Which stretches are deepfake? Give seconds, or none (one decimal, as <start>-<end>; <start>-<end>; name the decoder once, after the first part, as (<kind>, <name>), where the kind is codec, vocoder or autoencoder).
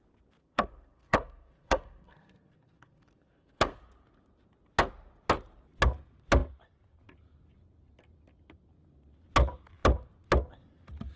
0.4-3.8 (codec, SNAC)